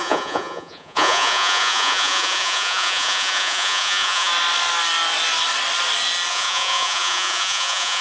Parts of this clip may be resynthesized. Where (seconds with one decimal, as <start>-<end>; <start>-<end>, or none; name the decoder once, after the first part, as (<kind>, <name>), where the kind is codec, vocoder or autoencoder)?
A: 0.0-4.3 (vocoder, Vocos); 6.3-8.0